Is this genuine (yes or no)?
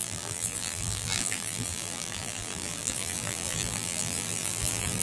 no